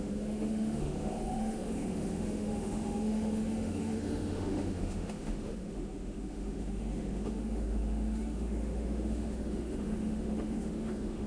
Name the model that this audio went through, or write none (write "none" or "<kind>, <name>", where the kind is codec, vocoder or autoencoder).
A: autoencoder, DAC-VAE